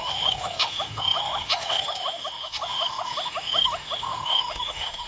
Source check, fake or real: fake